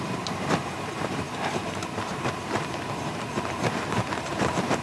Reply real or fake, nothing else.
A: fake